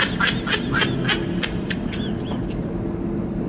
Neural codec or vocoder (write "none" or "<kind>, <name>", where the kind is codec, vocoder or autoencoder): none